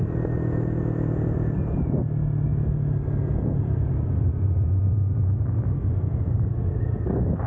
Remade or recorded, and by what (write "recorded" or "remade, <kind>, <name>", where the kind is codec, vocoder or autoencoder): recorded